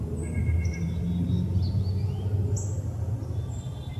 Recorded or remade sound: recorded